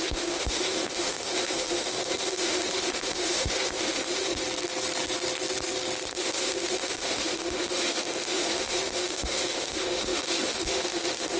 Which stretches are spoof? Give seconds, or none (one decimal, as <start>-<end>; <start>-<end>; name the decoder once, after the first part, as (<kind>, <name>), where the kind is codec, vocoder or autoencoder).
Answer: 0.0-4.4 (autoencoder, DAC-VAE); 6.1-11.4

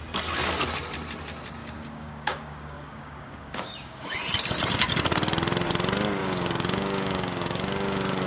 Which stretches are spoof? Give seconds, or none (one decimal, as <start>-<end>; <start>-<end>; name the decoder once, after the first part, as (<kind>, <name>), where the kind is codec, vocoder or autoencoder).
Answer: 1.6-4.1 (codec, DAC); 6.2-8.3